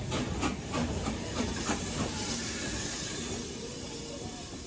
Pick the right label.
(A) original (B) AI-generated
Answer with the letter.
A